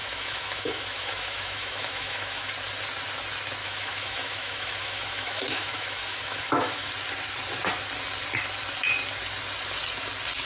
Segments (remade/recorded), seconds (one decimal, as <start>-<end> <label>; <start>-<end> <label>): 0.0-2.5 remade; 2.5-3.6 recorded; 3.6-6.9 remade; 6.9-10.5 recorded